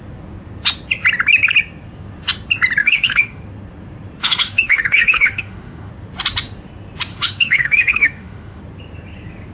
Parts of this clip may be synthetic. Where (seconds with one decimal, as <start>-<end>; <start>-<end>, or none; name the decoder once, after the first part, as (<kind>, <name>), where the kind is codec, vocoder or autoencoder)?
2.8-3.4 (autoencoder, DAC-VAE); 4.2-5.9; 7.1-8.6